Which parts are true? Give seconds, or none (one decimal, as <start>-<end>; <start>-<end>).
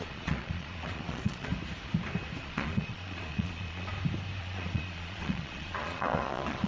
1.5-2.4; 3.9-4.4